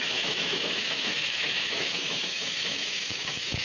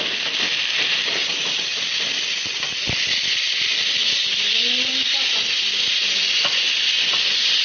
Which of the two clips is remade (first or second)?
first